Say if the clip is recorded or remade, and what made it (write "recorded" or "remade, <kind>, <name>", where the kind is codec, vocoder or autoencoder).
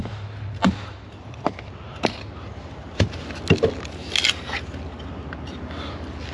recorded